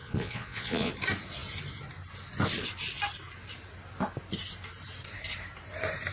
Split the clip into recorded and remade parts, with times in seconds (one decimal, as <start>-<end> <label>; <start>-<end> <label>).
0.0-0.9 remade; 0.9-6.1 recorded

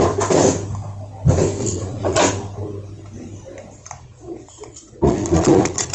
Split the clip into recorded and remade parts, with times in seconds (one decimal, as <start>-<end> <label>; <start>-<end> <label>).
0.0-1.6 recorded; 1.6-2.2 remade; 2.2-3.8 recorded; 3.8-5.9 remade

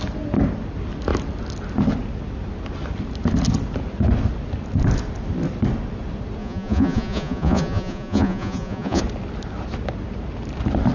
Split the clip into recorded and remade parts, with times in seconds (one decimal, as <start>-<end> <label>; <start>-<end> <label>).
0.0-6.4 recorded; 6.4-9.0 remade; 9.0-10.9 recorded

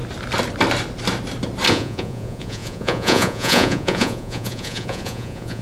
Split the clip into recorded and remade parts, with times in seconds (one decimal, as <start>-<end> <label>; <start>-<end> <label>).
0.0-1.7 recorded; 1.7-5.6 remade

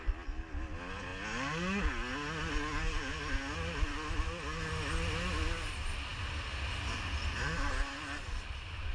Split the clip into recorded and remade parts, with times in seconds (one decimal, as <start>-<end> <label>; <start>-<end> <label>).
0.0-8.9 recorded

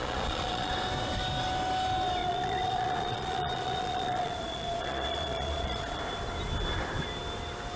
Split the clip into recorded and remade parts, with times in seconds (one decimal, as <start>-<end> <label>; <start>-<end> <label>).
0.0-0.7 remade; 0.7-2.2 recorded; 2.2-6.0 remade; 6.0-7.8 recorded